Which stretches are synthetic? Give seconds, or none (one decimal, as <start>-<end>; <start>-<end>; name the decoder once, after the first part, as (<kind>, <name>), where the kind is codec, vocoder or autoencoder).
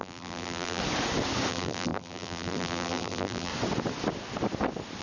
0.0-0.8 (vocoder, BigVGAN v2); 1.5-3.5